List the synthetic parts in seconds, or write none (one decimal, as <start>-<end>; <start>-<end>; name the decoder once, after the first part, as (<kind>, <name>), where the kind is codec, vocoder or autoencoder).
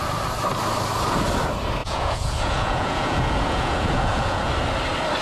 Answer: 1.8-4.5 (vocoder, Vocos)